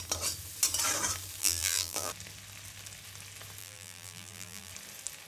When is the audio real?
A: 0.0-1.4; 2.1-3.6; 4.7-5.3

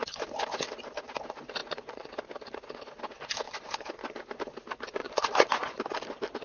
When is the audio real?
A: 0.0-1.6; 2.1-5.0; 5.8-6.4

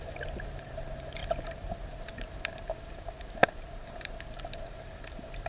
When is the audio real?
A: none

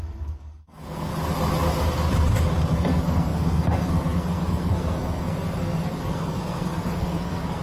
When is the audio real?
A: 1.1-2.7

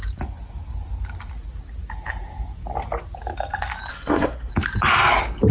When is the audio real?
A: 0.0-3.9; 4.5-5.5

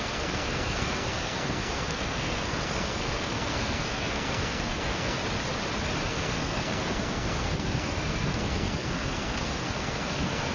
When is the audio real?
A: 5.2-6.1

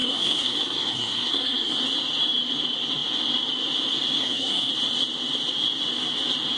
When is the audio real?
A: 1.8-4.2; 4.7-6.6